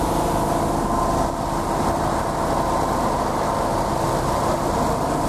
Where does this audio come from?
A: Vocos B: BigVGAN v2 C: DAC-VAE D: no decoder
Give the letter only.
D